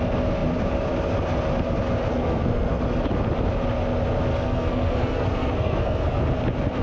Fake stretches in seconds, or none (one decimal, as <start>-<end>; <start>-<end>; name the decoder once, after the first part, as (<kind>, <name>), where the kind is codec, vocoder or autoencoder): 2.1-2.8 (codec, SNAC); 4.3-6.2